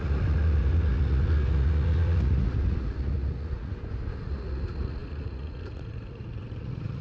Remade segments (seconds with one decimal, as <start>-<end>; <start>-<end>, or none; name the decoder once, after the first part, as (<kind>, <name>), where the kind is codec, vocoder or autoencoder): 0.0-7.0 (vocoder, Vocos)